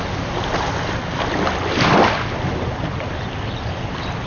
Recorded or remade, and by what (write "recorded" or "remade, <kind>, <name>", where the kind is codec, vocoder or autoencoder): recorded